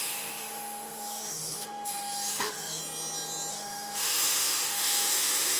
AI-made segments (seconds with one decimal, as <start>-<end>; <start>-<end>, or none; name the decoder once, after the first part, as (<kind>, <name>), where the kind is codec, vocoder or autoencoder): 0.0-2.8 (autoencoder, DAC-VAE); 3.5-5.6